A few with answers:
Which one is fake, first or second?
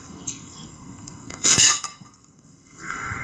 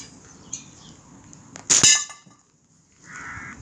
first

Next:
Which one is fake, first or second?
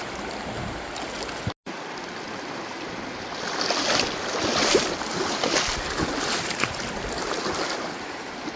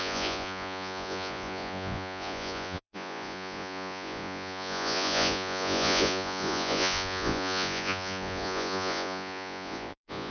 second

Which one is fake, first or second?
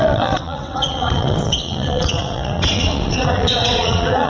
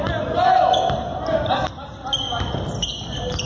first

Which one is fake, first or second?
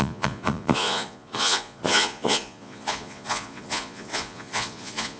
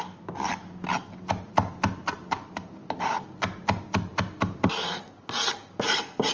first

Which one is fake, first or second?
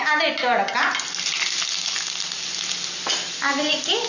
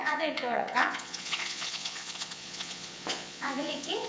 second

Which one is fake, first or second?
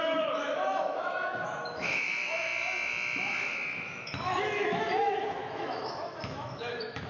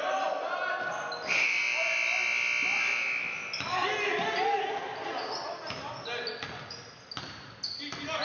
first